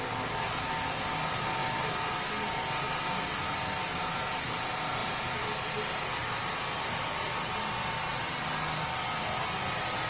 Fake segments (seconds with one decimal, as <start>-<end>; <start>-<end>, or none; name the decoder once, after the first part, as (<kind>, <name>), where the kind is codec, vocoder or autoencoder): none